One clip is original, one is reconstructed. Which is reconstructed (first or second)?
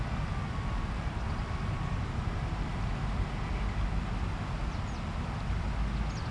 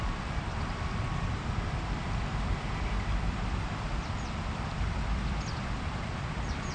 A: second